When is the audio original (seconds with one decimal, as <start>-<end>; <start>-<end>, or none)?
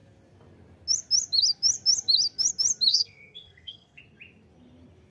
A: 0.0-2.9; 4.0-5.1